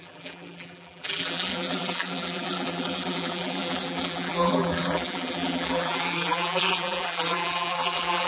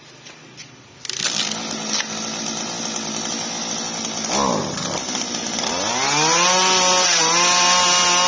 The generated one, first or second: first